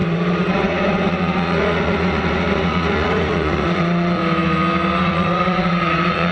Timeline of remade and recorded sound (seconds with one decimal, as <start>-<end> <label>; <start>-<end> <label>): 0.0-4.2 remade; 4.2-5.0 recorded; 5.0-6.3 remade